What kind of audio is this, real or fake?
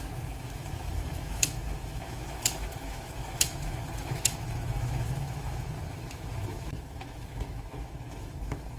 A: fake